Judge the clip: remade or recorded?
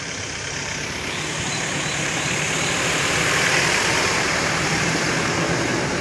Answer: remade